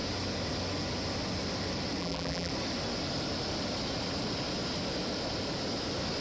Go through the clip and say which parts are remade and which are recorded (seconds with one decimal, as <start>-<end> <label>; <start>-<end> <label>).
0.0-2.0 recorded; 2.0-2.5 remade; 2.5-6.2 recorded